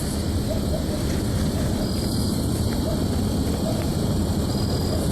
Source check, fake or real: fake